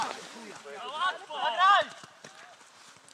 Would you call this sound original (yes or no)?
yes